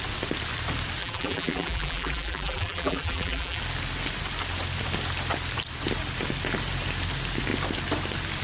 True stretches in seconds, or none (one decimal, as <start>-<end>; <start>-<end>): 0.0-1.0; 3.6-8.4